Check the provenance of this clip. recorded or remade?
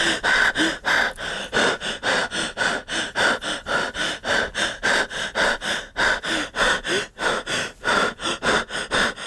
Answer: recorded